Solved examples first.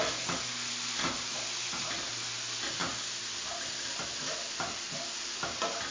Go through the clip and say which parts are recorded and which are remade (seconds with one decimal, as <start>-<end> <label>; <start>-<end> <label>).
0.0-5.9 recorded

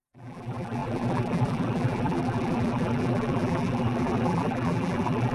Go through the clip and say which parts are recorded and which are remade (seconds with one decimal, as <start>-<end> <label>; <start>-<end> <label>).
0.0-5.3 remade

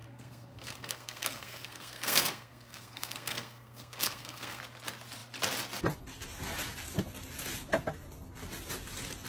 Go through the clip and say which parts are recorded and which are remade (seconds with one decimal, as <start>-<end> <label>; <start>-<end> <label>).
0.0-4.6 remade; 4.6-9.3 recorded

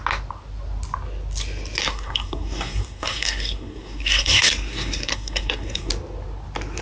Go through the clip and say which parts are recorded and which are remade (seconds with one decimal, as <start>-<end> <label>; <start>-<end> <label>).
0.0-1.8 recorded; 1.8-5.9 remade; 5.9-6.8 recorded

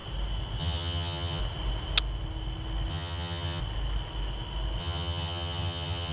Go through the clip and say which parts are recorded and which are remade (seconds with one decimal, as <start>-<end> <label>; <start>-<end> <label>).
0.0-0.6 recorded; 0.6-1.4 remade; 1.4-2.9 recorded; 2.9-3.6 remade; 3.6-4.8 recorded; 4.8-6.1 remade

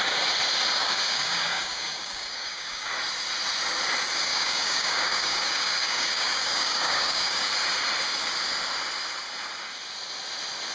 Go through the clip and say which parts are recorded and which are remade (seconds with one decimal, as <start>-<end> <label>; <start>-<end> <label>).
0.0-0.8 recorded; 0.8-2.9 remade; 2.9-4.3 recorded; 4.3-7.5 remade; 7.5-10.7 recorded